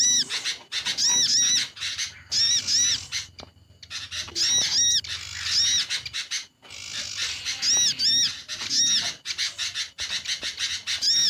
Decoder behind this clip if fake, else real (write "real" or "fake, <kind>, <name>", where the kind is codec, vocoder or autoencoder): real